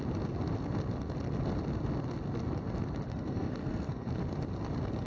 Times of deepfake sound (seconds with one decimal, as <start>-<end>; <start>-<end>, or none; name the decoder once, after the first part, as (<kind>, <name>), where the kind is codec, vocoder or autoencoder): 3.1-4.1 (codec, SNAC)